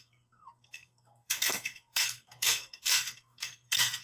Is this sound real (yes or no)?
no